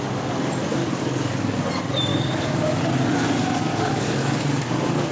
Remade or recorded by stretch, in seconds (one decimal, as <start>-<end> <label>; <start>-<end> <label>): 0.0-0.8 recorded; 0.8-1.6 remade; 1.6-2.1 recorded; 2.1-2.9 remade; 2.9-3.7 recorded; 3.7-5.1 remade